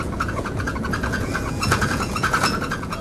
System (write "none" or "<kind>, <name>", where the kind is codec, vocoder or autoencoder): vocoder, Vocos